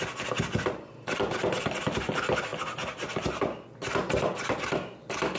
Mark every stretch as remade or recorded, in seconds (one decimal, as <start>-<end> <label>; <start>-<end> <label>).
0.0-5.4 recorded